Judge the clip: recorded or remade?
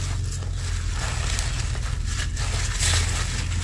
recorded